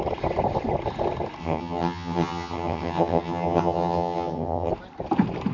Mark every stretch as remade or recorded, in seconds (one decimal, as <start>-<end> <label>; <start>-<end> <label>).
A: 0.0-1.4 recorded; 1.4-4.7 remade; 4.7-5.5 recorded